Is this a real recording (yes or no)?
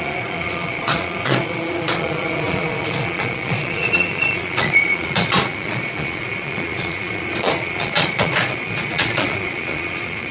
no